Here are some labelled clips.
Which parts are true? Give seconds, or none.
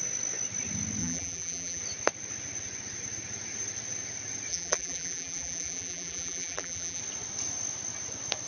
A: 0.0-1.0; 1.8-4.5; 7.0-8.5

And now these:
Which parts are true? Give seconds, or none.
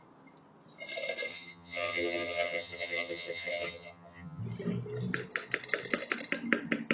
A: 0.0-1.3; 4.4-6.9